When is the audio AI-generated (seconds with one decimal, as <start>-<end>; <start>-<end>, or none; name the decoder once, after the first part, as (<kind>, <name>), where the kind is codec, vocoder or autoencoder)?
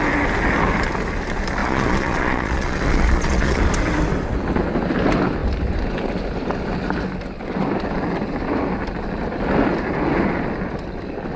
1.6-3.6 (vocoder, Vocos)